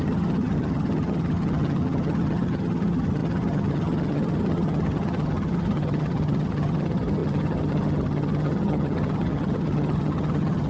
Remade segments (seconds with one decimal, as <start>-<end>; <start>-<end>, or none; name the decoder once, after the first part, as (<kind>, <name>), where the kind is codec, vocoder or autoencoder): 0.0-10.7 (vocoder, HiFi-GAN)